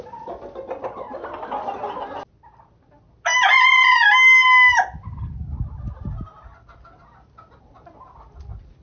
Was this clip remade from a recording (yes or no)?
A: no